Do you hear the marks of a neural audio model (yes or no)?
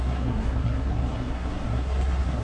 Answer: yes